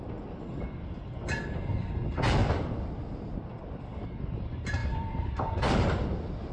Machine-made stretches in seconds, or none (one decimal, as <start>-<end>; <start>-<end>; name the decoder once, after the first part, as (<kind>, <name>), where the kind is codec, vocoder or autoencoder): 2.4-4.2 (vocoder, BigVGAN v2); 4.8-6.5